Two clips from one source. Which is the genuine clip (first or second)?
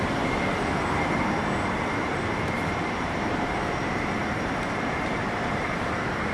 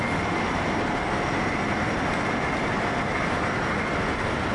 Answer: second